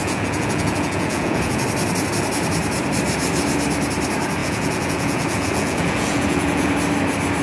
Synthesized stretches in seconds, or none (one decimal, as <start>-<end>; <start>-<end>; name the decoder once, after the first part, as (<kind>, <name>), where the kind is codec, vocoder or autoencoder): 0.0-1.6 (vocoder, Vocos); 4.4-6.7